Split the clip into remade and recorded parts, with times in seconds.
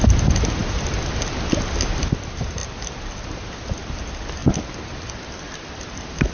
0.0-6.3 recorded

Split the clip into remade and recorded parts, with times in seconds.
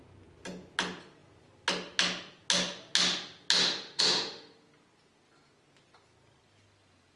0.0-7.2 recorded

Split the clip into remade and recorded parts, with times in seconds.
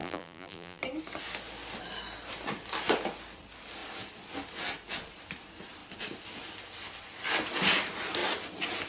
0.0-0.8 remade; 0.8-8.9 recorded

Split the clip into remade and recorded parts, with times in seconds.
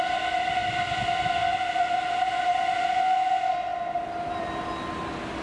0.0-5.4 recorded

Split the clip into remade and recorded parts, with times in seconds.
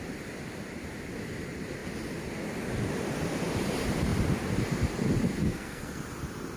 0.0-5.4 recorded; 5.4-6.0 remade; 6.0-6.6 recorded